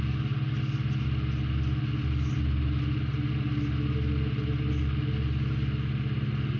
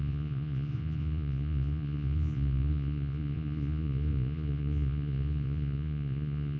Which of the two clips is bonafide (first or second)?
first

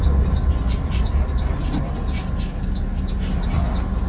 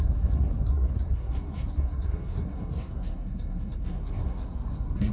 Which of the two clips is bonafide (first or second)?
first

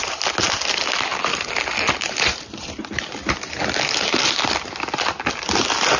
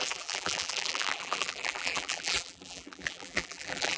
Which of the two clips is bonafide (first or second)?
first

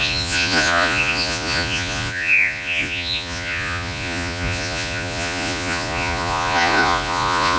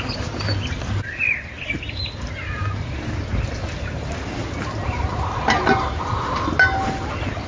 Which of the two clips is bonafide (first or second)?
second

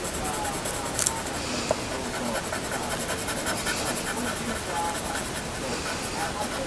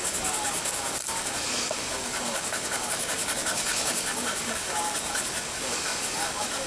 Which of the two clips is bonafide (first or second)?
first